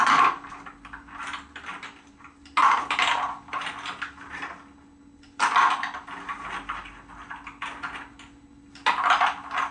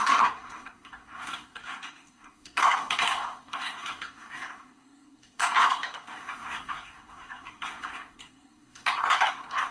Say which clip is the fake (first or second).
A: second